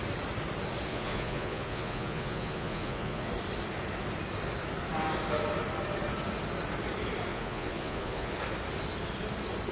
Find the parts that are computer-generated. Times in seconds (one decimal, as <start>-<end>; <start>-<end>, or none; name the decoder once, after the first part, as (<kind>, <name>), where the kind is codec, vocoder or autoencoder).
0.9-3.3 (vocoder, Vocos); 7.3-8.3

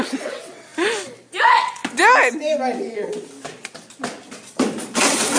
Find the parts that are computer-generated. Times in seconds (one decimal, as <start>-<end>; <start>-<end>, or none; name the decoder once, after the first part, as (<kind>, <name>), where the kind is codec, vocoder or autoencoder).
0.0-0.7 (vocoder, WaveNeXt); 1.4-1.8; 5.0-5.4